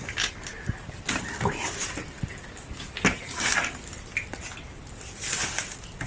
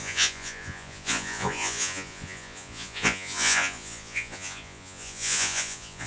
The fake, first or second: second